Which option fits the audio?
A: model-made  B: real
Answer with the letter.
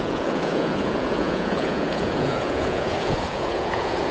A